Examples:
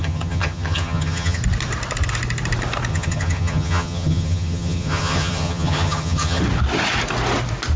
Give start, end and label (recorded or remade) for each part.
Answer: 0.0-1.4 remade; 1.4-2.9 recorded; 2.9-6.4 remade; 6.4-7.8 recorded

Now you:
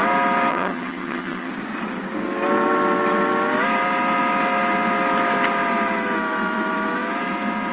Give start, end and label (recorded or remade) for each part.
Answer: 0.0-0.5 recorded; 0.5-1.5 remade; 1.5-7.7 recorded

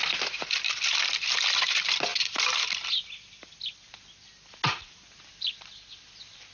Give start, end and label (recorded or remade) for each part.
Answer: 0.0-6.5 recorded

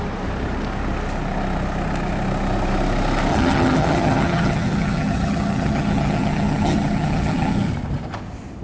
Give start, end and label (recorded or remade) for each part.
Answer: 0.0-3.3 recorded; 3.3-7.7 remade; 7.7-8.6 recorded